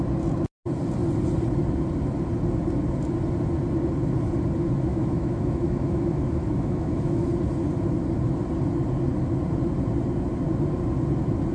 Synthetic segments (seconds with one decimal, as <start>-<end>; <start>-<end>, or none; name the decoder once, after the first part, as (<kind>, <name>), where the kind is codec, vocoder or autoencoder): 4.9-7.3 (autoencoder, DAC-VAE)